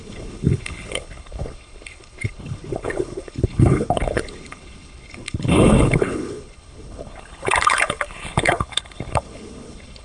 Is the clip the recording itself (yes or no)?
no